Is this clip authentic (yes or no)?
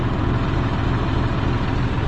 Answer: yes